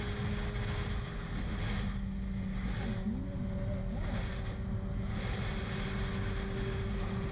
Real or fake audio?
real